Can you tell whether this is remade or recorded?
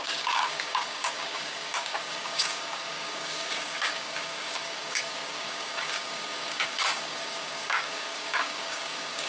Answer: remade